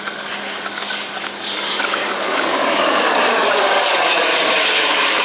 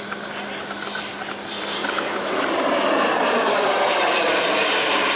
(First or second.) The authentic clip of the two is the second